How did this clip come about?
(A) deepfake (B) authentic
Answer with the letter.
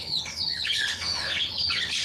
A